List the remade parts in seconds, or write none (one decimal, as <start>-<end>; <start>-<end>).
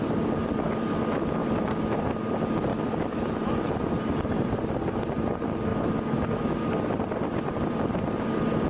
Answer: 2.7-3.7; 5.7-6.7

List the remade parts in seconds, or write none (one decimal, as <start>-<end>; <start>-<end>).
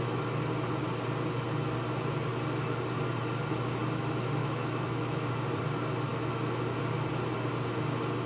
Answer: 4.4-5.3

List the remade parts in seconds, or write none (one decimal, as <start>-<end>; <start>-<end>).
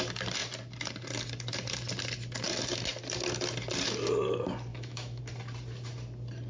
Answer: 4.7-5.2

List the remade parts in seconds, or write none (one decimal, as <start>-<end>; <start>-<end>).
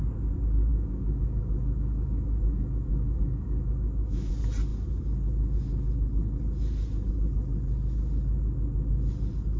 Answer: 0.7-4.3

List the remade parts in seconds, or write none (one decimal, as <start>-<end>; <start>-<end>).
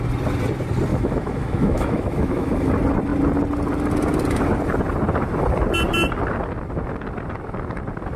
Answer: 0.9-2.7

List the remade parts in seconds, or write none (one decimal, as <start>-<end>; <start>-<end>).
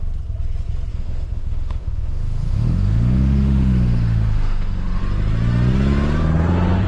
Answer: 0.9-5.0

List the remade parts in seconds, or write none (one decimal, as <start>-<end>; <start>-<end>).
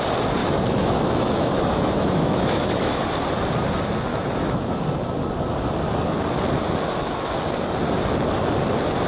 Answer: 0.4-3.1; 4.1-4.8